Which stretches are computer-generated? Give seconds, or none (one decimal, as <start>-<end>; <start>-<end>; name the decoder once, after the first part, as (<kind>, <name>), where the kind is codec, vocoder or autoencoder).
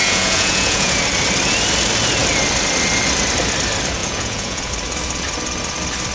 0.0-1.0 (vocoder, Vocos); 4.0-4.7